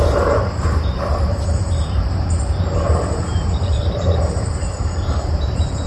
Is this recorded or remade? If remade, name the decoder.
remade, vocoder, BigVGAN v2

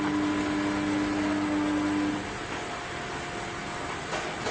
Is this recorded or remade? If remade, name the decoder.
recorded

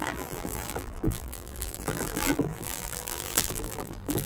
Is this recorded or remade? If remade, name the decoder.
remade, vocoder, BigVGAN v2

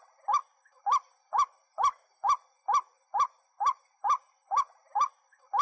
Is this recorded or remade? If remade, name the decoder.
recorded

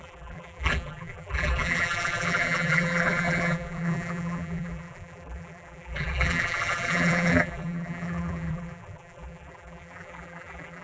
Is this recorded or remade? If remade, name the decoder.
remade, vocoder, BigVGAN v2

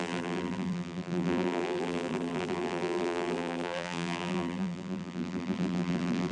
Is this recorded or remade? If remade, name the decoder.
remade, vocoder, BigVGAN v2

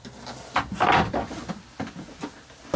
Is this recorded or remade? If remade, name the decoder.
recorded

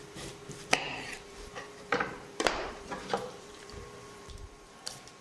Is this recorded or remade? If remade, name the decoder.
remade, vocoder, BigVGAN v2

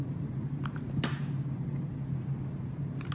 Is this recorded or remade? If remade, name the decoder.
remade, vocoder, BigVGAN v2